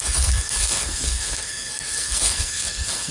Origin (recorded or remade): remade